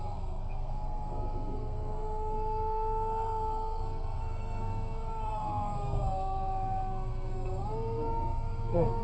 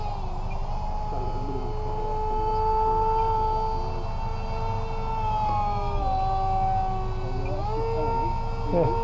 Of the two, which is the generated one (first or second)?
first